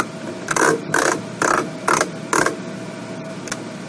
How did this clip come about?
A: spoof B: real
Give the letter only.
B